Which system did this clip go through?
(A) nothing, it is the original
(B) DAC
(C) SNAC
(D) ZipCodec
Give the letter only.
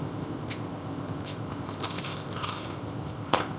D